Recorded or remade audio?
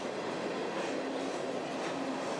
recorded